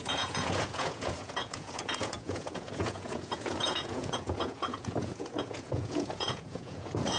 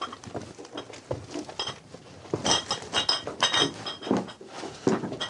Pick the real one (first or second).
second